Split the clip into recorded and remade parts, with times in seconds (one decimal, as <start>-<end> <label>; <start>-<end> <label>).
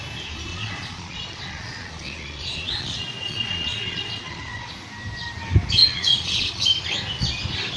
0.0-0.5 recorded; 0.5-4.7 remade; 4.7-5.8 recorded; 5.8-6.6 remade; 6.6-7.8 recorded